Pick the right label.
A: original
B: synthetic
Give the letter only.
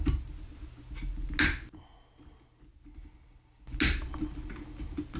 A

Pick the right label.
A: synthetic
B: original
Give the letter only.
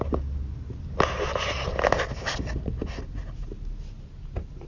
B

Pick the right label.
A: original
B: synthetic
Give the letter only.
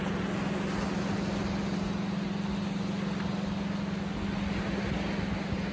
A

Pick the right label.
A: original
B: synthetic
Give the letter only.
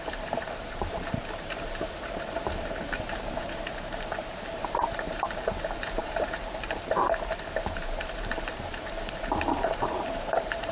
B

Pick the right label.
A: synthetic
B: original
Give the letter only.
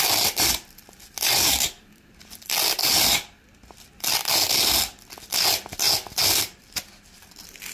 B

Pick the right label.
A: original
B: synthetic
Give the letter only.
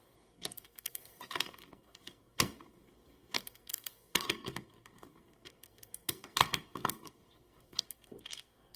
B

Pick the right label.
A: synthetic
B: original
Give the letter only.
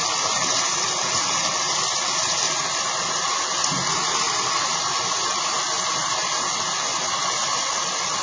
B